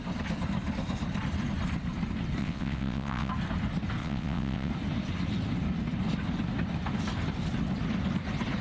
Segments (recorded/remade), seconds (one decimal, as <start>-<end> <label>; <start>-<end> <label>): 0.0-2.4 recorded; 2.4-3.3 remade; 3.3-4.0 recorded; 4.0-4.7 remade; 4.7-8.6 recorded